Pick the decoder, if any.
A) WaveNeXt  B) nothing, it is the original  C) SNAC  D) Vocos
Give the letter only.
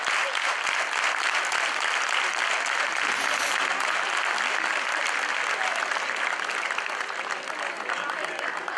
B